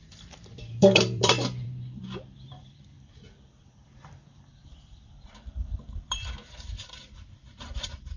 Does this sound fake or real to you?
fake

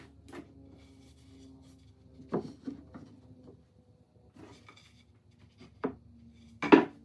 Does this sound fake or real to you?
real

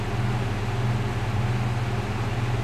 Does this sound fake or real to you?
real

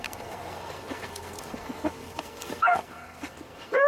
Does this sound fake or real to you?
fake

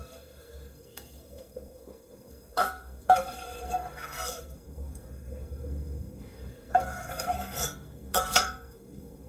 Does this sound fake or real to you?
fake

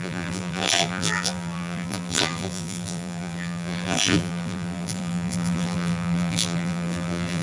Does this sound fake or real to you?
fake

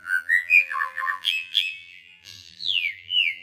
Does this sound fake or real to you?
fake